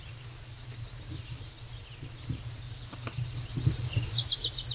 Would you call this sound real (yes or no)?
yes